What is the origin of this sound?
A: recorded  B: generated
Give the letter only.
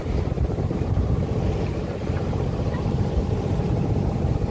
B